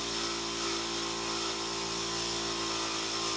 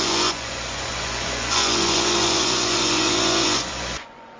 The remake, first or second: second